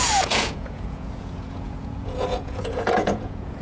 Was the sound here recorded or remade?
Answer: remade